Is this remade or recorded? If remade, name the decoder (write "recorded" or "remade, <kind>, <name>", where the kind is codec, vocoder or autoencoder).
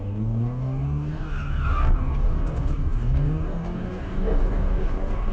remade, codec, DAC